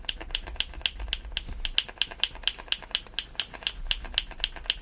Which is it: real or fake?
real